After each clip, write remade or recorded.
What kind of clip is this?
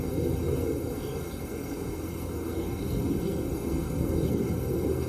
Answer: remade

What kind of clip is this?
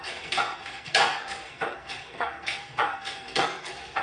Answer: remade